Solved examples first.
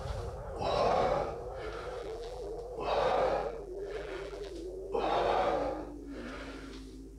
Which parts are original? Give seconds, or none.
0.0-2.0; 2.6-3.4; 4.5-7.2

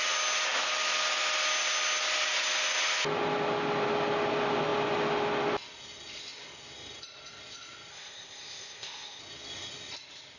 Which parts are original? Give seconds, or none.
0.0-7.9; 9.2-10.4

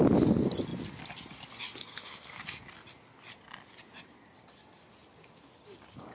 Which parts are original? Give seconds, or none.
0.0-1.8; 2.4-6.1

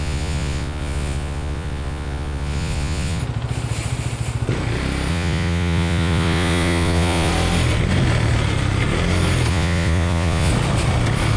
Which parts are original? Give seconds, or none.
3.2-5.1; 7.3-9.5; 10.5-11.4

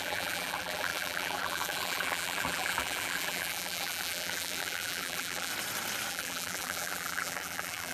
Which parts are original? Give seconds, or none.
5.5-6.1